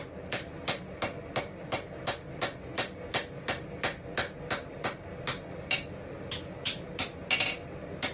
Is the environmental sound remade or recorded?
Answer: recorded